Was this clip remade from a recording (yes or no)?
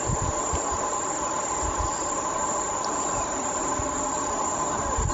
no